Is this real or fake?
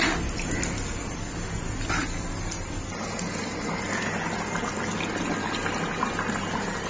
real